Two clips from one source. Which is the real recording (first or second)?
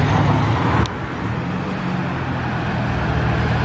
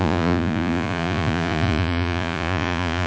first